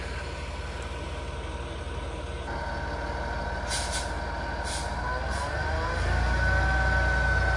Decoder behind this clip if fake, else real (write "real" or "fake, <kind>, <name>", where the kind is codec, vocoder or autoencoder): real